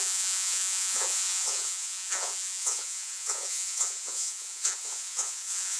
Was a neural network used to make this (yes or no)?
yes